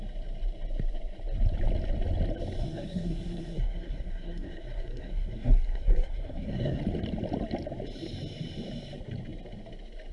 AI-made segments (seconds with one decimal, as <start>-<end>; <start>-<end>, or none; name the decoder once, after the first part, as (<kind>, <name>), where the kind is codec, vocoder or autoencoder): 2.6-6.8 (codec, SNAC)